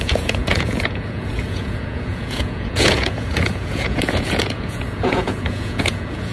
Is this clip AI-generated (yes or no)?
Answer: yes